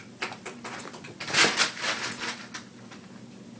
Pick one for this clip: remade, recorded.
recorded